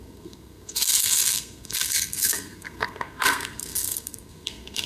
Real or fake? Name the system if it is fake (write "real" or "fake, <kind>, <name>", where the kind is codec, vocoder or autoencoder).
fake, codec, SNAC